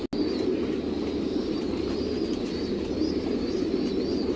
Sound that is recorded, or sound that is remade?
recorded